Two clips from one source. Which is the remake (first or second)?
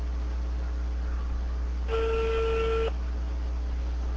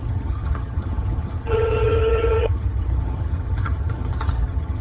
second